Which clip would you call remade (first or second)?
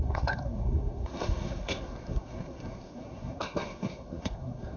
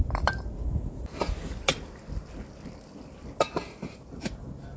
first